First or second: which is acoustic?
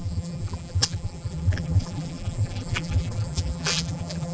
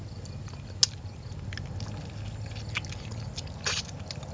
second